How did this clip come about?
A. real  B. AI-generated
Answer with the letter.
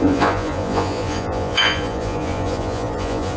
B